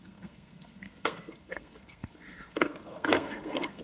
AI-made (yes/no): yes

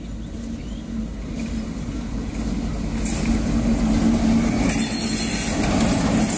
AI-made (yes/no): no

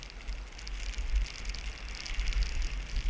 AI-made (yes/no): no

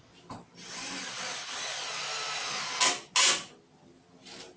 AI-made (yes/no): no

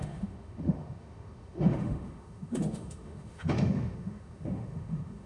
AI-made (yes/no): yes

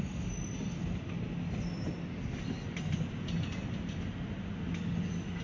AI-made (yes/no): no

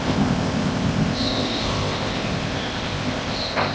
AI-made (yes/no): yes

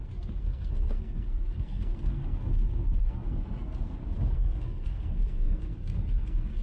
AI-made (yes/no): yes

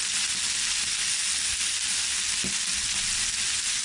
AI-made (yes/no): no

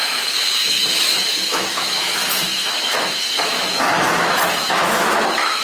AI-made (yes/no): yes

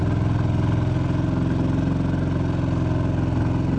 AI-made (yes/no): no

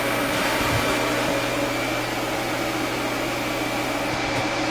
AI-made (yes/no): no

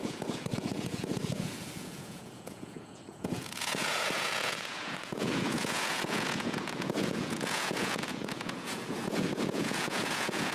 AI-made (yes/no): yes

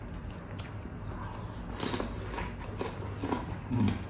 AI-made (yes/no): no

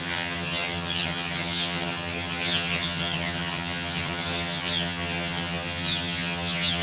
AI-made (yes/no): yes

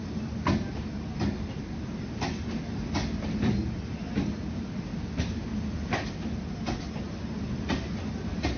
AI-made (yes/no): no